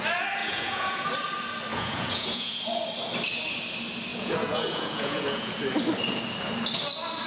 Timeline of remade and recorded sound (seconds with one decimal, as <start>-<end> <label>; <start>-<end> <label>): 0.0-0.4 recorded; 0.4-1.1 remade; 1.1-1.7 recorded; 1.7-2.6 remade; 2.6-4.1 recorded; 4.1-5.5 remade; 5.5-7.3 recorded